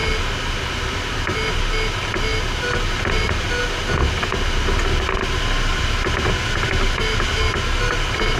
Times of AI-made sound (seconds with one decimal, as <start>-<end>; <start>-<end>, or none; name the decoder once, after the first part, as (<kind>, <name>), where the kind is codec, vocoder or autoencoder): none